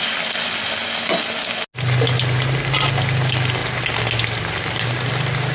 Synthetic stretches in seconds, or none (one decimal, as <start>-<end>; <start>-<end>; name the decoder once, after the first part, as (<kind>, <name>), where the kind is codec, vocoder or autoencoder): none

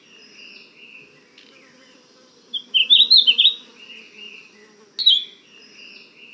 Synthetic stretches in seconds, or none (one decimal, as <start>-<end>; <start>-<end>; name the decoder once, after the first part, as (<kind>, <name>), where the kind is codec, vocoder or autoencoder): 5.0-5.6 (vocoder, BigVGAN v2)

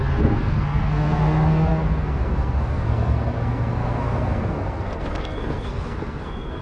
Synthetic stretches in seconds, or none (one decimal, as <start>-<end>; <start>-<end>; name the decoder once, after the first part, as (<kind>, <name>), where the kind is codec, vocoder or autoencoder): 0.0-6.6 (codec, SNAC)

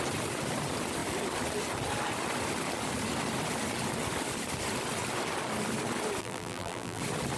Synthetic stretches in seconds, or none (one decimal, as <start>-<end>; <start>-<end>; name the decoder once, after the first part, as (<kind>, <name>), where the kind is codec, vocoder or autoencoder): 6.2-7.0 (vocoder, BigVGAN v2)

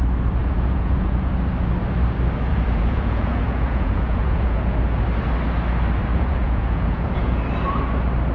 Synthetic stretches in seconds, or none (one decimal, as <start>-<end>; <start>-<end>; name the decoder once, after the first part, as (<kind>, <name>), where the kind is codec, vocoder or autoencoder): 0.4-1.3 (vocoder, Vocos); 2.5-4.8; 6.1-7.4

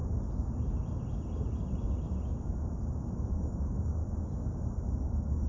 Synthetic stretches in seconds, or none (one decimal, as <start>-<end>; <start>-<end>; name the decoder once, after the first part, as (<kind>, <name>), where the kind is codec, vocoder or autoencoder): 3.3-4.0 (codec, DAC); 5.0-5.5

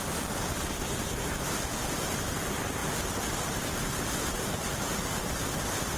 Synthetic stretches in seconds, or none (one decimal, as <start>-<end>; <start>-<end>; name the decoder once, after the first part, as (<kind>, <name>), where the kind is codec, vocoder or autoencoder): none

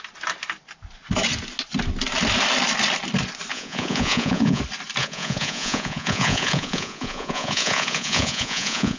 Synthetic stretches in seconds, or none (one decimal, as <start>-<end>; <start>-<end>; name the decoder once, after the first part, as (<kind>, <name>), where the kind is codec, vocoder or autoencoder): 3.5-4.6 (vocoder, Vocos); 5.0-9.0